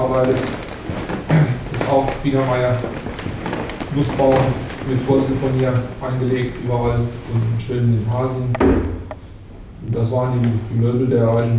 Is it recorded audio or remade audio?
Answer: recorded